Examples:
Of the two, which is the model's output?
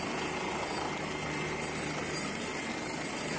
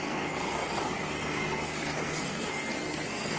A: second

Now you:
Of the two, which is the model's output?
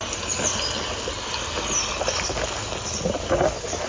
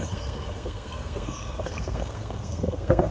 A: second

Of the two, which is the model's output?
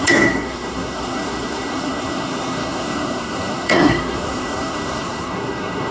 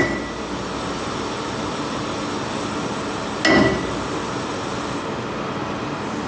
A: first